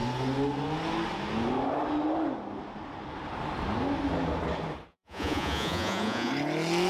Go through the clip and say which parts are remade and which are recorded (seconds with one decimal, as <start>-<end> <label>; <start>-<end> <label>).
0.0-4.9 recorded; 4.9-6.3 remade; 6.3-6.9 recorded